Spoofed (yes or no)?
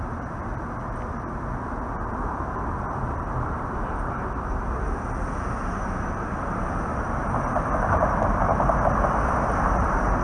yes